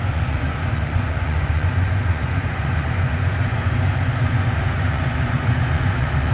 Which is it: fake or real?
fake